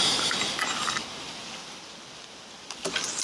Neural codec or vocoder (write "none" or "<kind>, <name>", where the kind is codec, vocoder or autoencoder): none